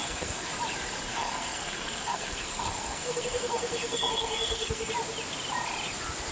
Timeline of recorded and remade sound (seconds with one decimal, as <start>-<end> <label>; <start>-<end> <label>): 0.0-0.5 remade; 0.5-1.1 recorded; 1.1-4.9 remade; 4.9-6.3 recorded